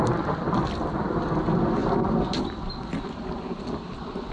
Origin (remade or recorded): recorded